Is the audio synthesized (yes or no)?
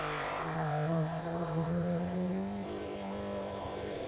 yes